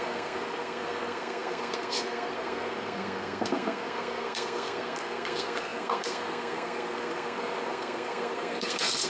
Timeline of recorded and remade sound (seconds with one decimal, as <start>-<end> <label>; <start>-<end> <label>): 0.0-9.1 remade